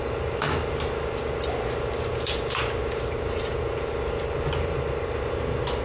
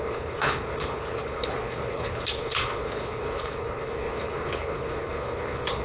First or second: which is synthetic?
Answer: second